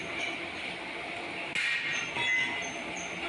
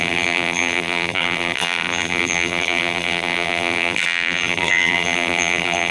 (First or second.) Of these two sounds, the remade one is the second